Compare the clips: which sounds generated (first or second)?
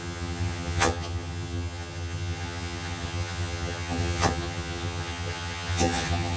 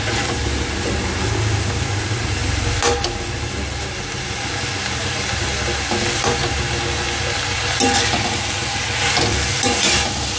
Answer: first